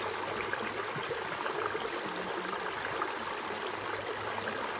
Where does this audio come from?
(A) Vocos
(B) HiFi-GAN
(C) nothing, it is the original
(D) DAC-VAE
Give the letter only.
C